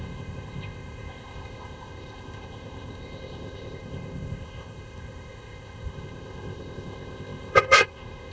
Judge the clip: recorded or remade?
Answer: remade